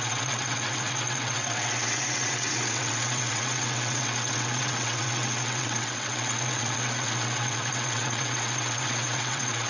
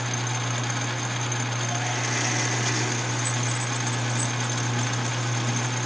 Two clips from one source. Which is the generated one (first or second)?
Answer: first